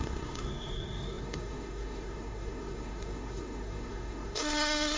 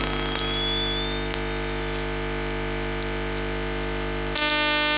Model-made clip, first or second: first